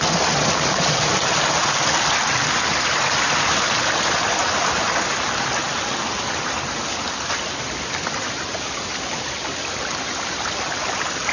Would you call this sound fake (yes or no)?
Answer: no